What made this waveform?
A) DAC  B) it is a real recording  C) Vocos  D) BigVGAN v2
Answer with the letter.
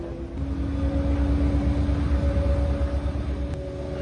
B